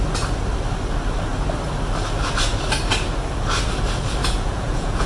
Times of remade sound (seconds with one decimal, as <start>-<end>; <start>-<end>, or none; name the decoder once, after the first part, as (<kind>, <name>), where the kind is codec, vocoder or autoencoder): 4.2-5.1 (vocoder, Vocos)